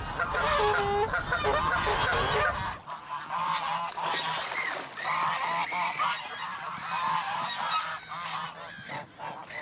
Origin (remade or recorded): recorded